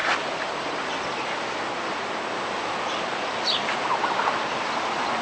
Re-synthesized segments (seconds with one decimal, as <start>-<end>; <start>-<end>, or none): none